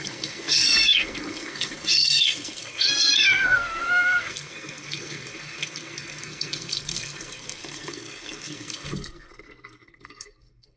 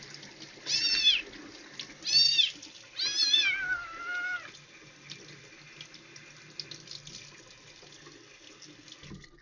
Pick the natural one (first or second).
second